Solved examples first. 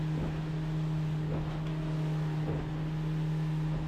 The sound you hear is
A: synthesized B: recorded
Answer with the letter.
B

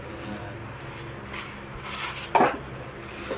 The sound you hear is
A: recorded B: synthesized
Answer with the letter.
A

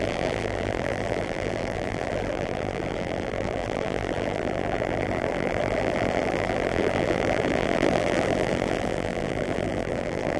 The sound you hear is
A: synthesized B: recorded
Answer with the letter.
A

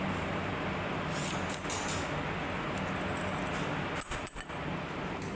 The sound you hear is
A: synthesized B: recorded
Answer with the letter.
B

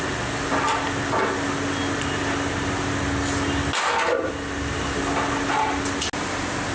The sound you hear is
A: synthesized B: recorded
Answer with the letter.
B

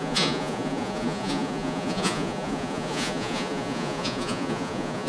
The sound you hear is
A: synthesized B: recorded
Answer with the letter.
A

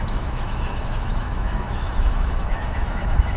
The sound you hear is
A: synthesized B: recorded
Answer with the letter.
A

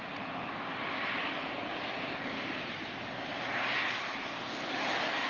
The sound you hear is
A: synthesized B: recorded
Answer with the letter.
B